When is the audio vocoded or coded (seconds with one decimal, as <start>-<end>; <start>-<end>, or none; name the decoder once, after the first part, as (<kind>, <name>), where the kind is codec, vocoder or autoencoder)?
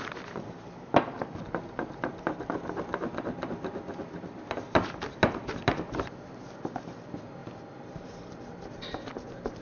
none